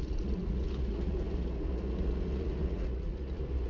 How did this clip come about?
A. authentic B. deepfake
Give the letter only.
B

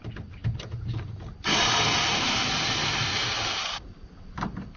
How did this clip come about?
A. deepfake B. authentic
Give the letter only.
A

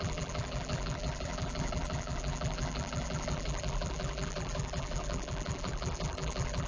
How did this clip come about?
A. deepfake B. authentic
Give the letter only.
A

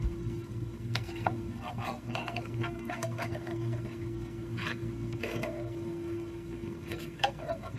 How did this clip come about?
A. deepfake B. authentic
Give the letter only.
A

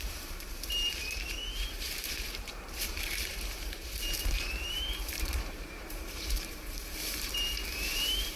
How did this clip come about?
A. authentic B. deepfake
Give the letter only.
B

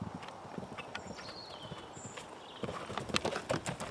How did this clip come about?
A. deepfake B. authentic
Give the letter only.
B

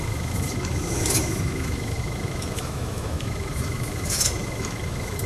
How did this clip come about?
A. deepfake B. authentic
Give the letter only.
A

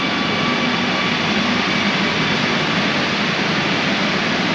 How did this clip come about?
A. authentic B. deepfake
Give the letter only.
A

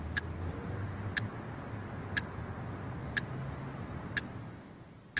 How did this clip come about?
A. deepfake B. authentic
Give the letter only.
B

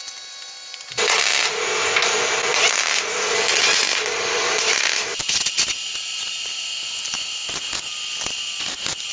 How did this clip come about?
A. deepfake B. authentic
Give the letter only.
B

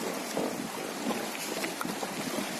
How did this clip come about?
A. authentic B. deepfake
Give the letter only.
A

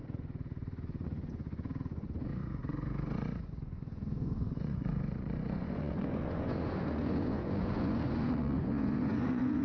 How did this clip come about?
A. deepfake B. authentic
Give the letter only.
A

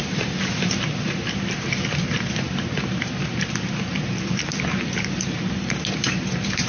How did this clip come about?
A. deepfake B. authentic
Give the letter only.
A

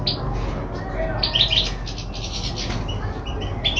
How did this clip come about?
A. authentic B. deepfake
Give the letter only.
A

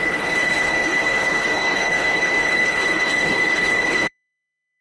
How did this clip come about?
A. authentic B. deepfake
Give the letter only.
B